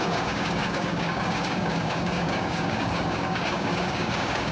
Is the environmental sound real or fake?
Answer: fake